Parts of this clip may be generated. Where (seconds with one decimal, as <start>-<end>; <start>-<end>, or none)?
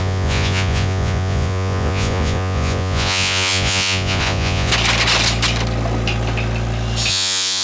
0.0-4.7; 7.1-7.6